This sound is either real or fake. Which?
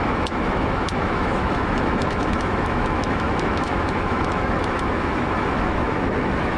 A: fake